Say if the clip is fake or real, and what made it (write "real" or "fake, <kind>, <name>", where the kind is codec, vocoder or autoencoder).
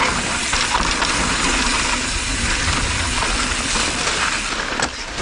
real